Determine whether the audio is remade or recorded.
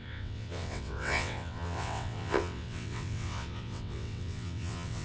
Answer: remade